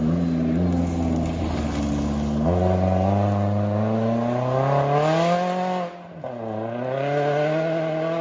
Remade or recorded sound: recorded